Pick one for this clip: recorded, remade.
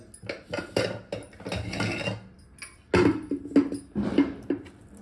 recorded